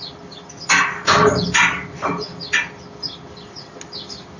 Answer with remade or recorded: recorded